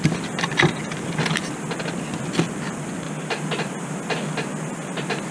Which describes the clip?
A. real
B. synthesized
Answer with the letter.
A